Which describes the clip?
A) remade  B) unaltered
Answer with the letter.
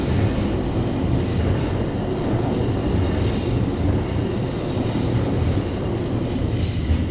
B